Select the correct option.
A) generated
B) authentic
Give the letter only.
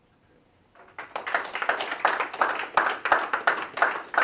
B